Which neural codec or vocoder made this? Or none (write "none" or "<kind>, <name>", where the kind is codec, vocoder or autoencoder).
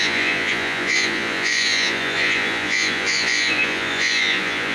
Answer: vocoder, Vocos